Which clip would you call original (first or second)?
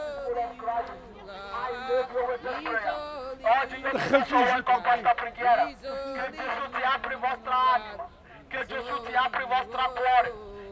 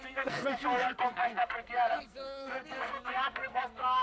first